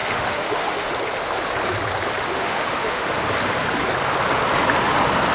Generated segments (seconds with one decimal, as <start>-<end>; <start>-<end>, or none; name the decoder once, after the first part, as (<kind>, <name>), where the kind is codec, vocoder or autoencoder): 0.0-0.9 (autoencoder, DAC-VAE); 2.3-3.1

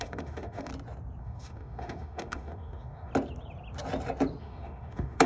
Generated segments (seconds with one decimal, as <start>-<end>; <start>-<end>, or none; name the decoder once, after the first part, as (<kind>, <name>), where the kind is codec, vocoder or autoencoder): 0.0-0.7 (autoencoder, DAC-VAE); 1.2-3.1; 4.4-5.3

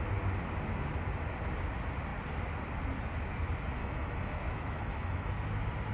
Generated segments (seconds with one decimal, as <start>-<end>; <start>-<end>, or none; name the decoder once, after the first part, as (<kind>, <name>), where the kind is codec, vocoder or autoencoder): 3.8-5.3 (autoencoder, DAC-VAE)

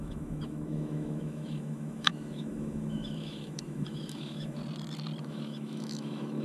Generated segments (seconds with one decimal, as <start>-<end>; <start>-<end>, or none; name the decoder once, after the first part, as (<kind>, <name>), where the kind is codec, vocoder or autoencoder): 0.0-4.6 (autoencoder, DAC-VAE); 5.2-6.4

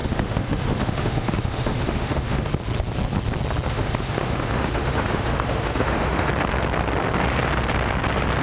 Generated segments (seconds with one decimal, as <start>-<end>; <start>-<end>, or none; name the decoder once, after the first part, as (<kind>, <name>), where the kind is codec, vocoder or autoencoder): 0.0-2.5 (autoencoder, DAC-VAE); 3.7-6.3